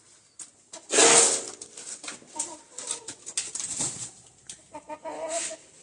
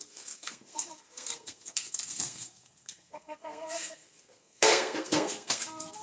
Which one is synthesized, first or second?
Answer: second